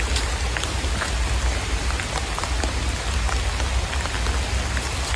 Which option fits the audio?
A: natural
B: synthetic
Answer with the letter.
A